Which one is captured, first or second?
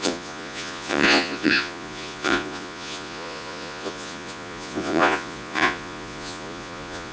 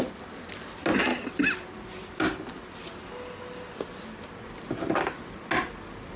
second